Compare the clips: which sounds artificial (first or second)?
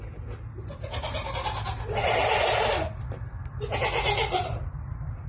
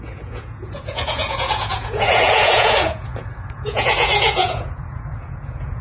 second